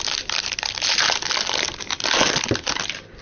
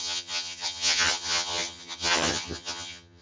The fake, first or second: second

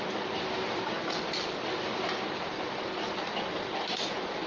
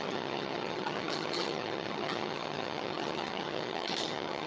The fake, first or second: second